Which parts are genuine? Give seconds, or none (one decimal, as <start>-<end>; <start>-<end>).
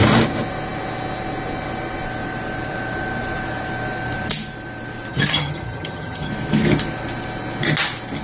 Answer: 0.0-5.1; 6.3-8.2